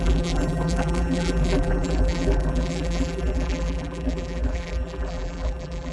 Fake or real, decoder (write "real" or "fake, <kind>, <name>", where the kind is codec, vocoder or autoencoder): fake, vocoder, BigVGAN v2